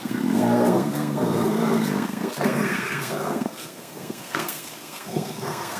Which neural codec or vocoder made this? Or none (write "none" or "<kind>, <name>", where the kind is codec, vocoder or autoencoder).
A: codec, SNAC